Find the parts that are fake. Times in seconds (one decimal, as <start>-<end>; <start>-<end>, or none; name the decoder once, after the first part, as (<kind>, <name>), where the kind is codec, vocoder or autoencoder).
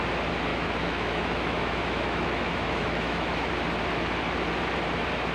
0.5-3.5 (autoencoder, DAC-VAE)